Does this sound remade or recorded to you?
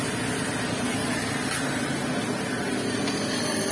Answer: recorded